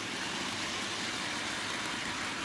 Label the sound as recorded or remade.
recorded